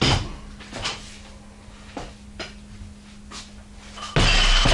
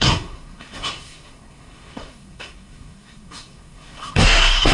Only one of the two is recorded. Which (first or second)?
first